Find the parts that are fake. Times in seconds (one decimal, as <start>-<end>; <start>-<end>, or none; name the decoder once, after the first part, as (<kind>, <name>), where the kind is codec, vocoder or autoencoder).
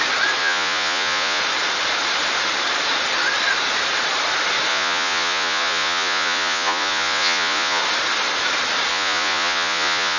0.4-1.4 (vocoder, Vocos); 4.7-7.8; 8.9-10.2